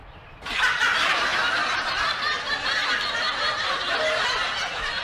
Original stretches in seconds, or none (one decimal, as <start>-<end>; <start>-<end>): none